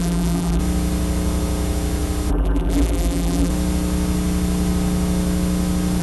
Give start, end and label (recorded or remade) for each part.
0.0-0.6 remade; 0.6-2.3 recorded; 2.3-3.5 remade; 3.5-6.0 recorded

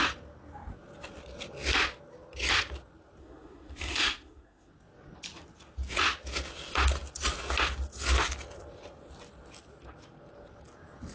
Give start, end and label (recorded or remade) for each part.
0.0-3.2 recorded; 3.2-4.7 remade; 4.7-11.1 recorded

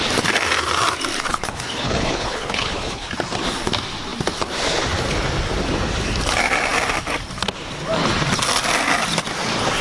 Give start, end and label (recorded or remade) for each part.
0.0-1.3 recorded; 1.3-3.1 remade; 3.1-9.8 recorded

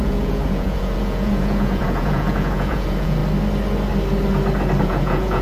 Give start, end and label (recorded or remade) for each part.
0.0-3.2 remade; 3.2-4.8 recorded; 4.8-5.4 remade

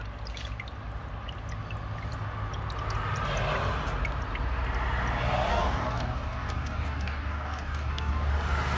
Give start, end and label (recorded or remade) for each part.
0.0-5.5 recorded; 5.5-8.3 remade; 8.3-8.8 recorded

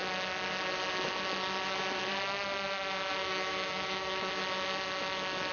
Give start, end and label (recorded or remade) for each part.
0.0-3.2 recorded; 3.2-4.3 remade; 4.3-5.5 recorded

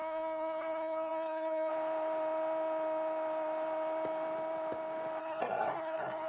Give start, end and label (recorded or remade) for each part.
0.0-1.7 remade; 1.7-5.2 recorded; 5.2-6.3 remade

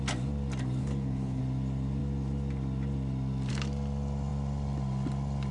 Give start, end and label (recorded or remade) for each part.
0.0-0.8 recorded; 0.8-1.4 remade; 1.4-5.5 recorded